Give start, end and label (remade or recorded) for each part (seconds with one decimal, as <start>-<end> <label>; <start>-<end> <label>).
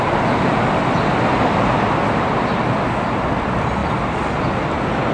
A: 0.0-5.1 recorded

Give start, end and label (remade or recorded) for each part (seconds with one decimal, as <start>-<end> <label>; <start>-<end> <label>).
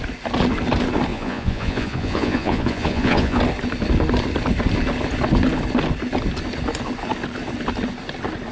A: 0.0-1.1 recorded; 1.1-3.4 remade; 3.4-8.5 recorded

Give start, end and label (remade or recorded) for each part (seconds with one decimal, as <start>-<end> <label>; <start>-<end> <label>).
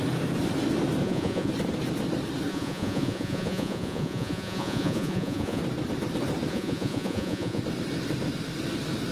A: 0.0-1.0 recorded; 1.0-1.5 remade; 1.5-2.5 recorded; 2.5-5.6 remade; 5.6-6.5 recorded; 6.5-7.6 remade; 7.6-9.1 recorded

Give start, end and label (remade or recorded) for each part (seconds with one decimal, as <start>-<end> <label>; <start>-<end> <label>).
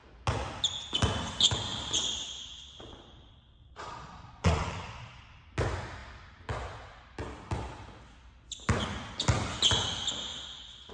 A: 0.0-1.7 recorded; 1.7-5.4 remade; 5.4-10.3 recorded; 10.3-10.9 remade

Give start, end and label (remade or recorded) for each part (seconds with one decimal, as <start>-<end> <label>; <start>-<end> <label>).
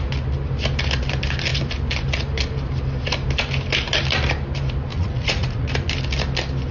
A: 0.0-4.9 recorded; 4.9-5.7 remade; 5.7-6.7 recorded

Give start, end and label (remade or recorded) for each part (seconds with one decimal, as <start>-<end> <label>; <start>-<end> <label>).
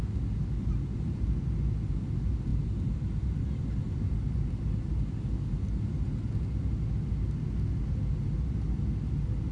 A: 0.0-9.5 recorded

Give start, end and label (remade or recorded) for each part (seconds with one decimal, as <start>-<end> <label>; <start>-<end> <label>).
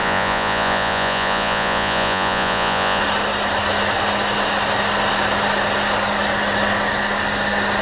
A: 0.0-3.0 remade; 3.0-7.8 recorded